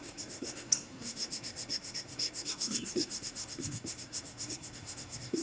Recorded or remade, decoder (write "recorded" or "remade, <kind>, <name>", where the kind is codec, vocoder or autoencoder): remade, codec, SNAC